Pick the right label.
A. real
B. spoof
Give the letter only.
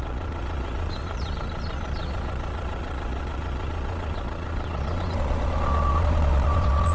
B